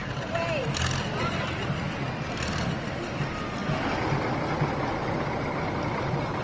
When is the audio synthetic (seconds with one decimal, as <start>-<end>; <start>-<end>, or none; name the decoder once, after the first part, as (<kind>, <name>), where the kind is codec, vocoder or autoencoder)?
none